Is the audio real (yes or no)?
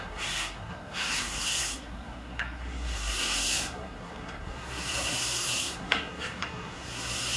no